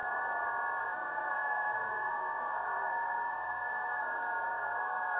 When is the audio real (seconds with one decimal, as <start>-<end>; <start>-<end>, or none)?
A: 0.0-0.8

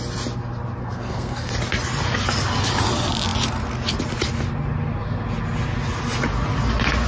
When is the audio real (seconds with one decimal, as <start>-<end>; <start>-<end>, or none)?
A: 0.0-0.8; 1.5-7.1